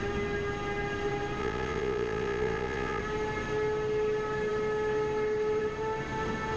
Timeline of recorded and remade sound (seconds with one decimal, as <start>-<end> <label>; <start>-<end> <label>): 0.0-1.4 recorded; 1.4-3.0 remade; 3.0-6.6 recorded